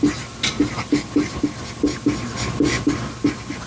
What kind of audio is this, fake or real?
real